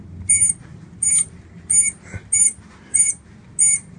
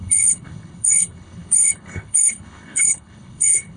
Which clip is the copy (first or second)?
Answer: second